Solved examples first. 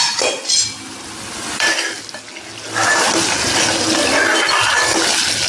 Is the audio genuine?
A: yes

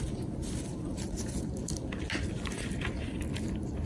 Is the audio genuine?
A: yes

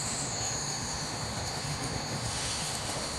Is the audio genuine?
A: no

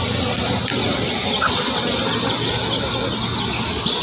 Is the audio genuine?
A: yes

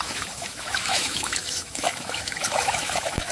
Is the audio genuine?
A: no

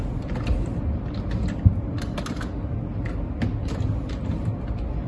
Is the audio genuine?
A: yes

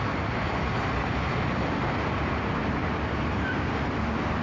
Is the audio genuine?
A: yes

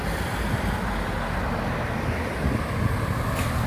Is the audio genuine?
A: yes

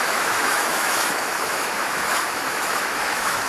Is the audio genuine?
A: no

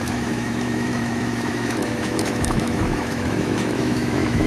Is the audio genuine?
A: no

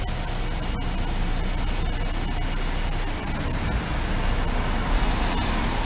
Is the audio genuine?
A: yes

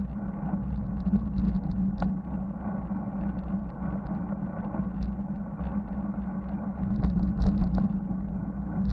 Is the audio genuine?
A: yes